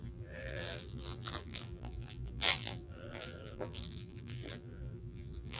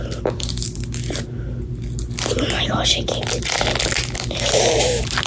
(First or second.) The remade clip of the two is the first